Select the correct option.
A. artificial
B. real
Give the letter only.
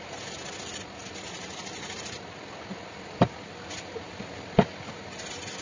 B